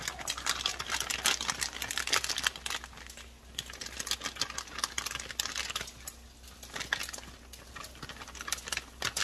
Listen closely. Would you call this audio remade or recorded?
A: recorded